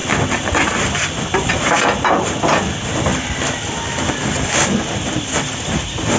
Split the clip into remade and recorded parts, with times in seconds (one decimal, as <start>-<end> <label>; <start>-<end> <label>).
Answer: 0.0-6.2 remade